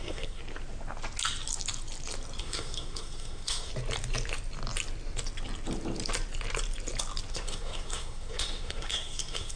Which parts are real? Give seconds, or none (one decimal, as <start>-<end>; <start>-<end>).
0.4-2.4; 3.7-7.3